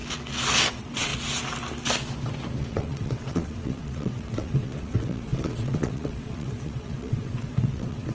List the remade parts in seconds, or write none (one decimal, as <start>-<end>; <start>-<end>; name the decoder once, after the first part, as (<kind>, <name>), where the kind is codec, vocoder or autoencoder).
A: 0.7-1.1 (vocoder, WaveNeXt); 2.6-8.1